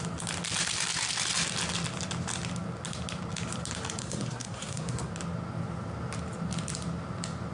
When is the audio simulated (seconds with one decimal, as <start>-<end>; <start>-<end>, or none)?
4.0-5.1